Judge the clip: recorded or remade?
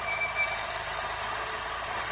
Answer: remade